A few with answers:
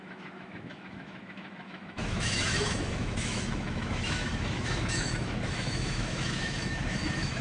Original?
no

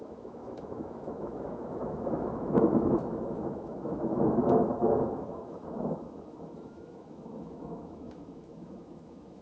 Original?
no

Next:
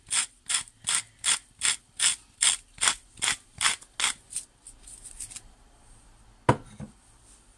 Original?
yes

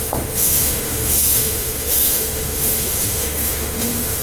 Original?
no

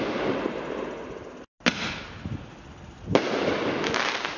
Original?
yes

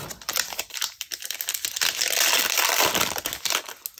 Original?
yes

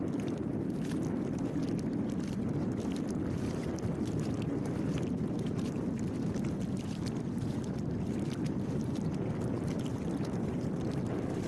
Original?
yes